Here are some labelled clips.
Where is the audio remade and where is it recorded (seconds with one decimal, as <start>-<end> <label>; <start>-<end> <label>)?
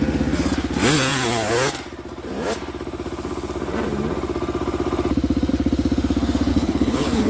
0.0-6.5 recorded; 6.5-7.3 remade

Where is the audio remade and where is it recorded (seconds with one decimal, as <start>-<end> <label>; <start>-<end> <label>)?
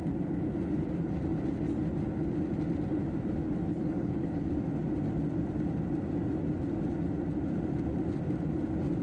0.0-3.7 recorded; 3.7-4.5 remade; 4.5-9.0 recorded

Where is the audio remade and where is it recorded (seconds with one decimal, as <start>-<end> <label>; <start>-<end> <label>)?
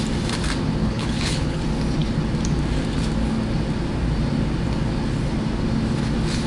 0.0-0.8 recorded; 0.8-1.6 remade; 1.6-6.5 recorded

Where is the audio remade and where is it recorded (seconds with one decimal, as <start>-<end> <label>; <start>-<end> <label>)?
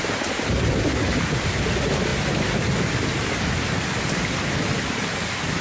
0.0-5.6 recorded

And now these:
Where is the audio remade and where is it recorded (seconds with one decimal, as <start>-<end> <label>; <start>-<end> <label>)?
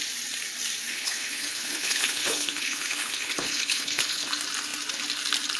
0.0-0.9 recorded; 0.9-4.3 remade; 4.3-5.6 recorded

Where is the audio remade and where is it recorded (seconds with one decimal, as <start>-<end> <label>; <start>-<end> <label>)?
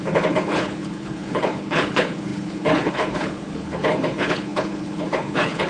0.0-5.7 remade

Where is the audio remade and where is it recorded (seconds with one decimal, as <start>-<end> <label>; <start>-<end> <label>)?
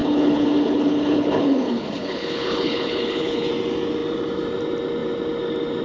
0.0-3.5 remade; 3.5-5.8 recorded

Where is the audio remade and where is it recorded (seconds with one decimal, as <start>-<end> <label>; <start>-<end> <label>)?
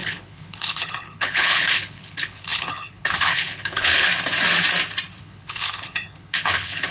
0.0-4.1 remade; 4.1-5.2 recorded; 5.2-6.9 remade